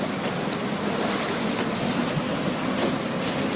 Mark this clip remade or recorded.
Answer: recorded